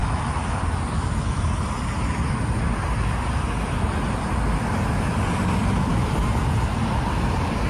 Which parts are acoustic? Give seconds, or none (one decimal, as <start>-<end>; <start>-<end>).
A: 0.6-7.7